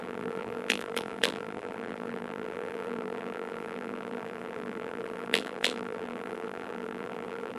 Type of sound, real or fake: fake